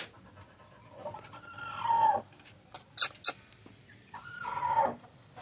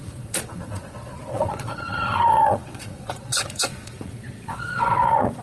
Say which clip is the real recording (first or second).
first